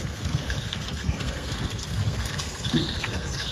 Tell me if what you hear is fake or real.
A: fake